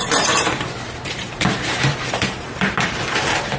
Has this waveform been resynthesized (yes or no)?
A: yes